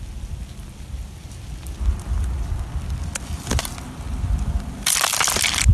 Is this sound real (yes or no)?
yes